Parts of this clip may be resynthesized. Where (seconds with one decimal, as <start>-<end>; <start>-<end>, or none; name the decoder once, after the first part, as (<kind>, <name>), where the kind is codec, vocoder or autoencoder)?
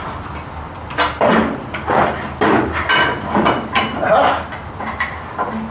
0.0-5.7 (vocoder, BigVGAN v2)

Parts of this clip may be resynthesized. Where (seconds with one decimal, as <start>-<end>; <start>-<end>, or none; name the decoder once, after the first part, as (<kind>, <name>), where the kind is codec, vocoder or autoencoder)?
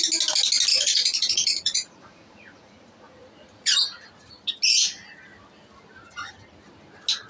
0.7-4.3 (vocoder, Vocos)